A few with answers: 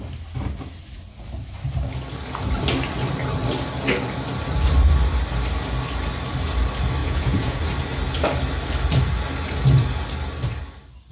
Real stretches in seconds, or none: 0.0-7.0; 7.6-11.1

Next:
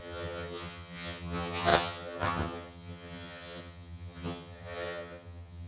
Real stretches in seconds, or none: none

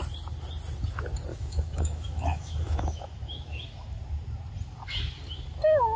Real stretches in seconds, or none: 0.0-1.3; 4.0-6.0